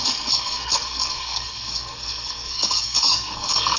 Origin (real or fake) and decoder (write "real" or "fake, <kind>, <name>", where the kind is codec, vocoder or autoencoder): fake, codec, SNAC